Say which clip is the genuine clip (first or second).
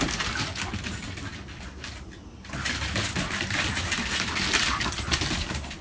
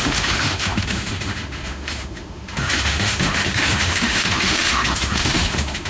first